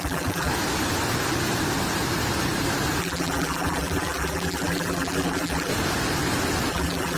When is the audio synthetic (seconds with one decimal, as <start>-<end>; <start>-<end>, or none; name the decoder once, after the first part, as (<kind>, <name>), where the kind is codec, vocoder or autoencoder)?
0.0-0.5 (vocoder, BigVGAN v2); 3.0-5.7; 6.7-7.2